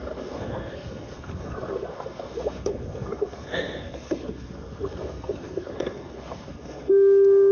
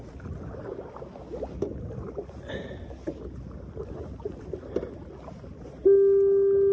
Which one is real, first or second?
second